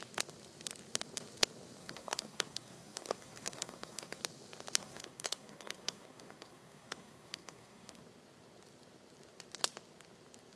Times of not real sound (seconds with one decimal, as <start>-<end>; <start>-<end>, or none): 1.8-4.2; 4.8-8.0